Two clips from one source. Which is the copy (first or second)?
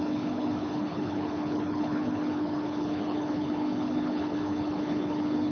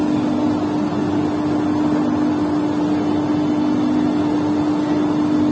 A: first